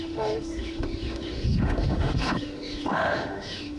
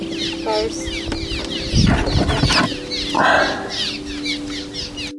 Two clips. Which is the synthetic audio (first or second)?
first